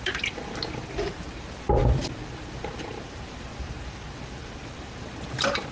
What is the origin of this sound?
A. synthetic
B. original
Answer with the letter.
A